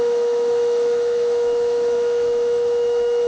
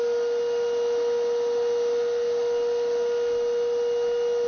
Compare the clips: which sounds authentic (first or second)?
second